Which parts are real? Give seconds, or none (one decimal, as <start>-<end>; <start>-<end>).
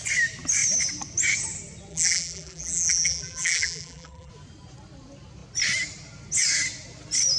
0.0-1.9; 4.3-7.4